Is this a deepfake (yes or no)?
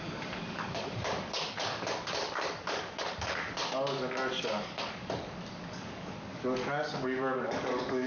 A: yes